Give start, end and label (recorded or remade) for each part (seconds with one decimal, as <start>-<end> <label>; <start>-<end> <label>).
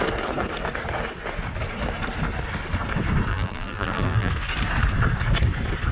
0.0-3.3 recorded; 3.3-4.3 remade; 4.3-5.9 recorded